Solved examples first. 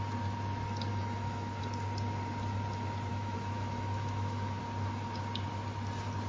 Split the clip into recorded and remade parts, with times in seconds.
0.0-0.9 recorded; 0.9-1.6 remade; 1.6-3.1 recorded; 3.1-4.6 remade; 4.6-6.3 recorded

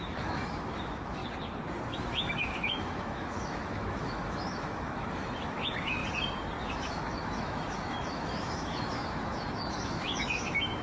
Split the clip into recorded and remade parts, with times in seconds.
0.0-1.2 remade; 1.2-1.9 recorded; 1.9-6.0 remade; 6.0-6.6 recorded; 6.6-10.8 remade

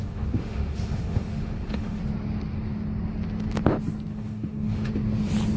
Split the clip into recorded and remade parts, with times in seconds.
0.0-2.0 remade; 2.0-4.1 recorded; 4.1-4.9 remade; 4.9-5.6 recorded